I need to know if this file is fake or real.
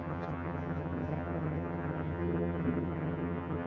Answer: fake